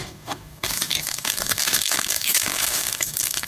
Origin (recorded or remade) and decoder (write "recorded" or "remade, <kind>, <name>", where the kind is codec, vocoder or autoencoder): remade, codec, DAC